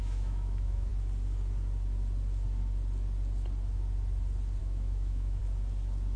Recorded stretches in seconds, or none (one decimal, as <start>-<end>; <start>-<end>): 0.9-4.6; 5.4-6.2